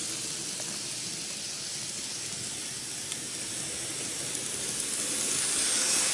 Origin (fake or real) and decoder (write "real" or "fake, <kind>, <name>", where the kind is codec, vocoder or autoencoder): real